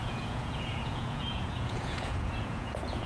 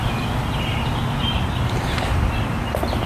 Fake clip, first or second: first